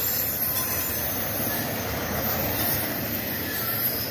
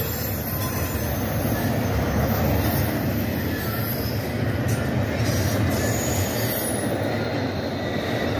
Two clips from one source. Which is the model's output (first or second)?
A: first